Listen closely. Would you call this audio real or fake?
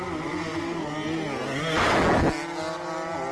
real